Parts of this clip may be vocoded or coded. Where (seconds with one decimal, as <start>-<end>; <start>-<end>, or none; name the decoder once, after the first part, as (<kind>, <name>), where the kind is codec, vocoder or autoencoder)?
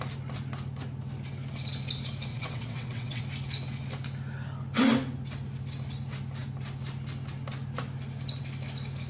2.3-3.2 (vocoder, WaveNeXt)